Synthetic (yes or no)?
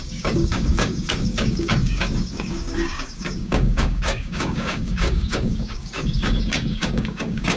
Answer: yes